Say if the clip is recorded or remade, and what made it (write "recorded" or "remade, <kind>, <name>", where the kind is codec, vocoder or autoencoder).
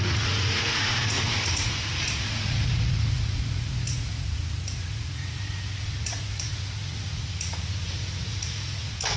remade, vocoder, Vocos